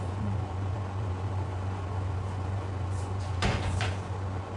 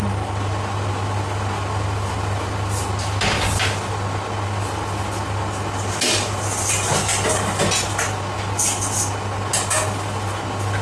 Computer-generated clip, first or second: first